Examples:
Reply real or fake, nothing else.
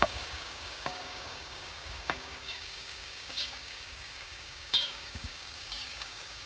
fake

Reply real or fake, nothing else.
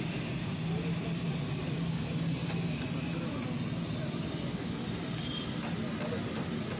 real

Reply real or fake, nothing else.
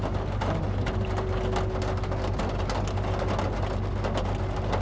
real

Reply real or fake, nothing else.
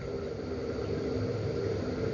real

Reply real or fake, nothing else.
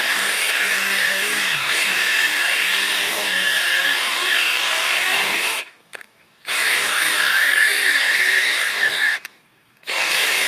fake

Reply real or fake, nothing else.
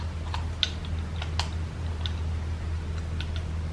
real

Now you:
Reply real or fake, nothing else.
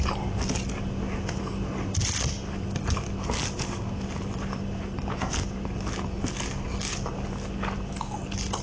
real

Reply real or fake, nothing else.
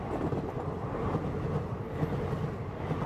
real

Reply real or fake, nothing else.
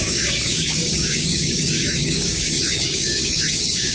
fake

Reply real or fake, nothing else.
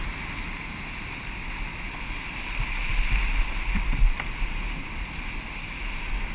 real